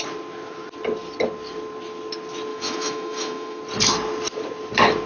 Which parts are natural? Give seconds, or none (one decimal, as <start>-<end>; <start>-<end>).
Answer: 0.0-2.5; 3.6-5.1